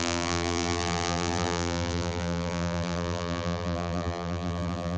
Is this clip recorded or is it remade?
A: remade